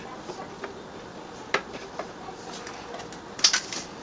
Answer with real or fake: real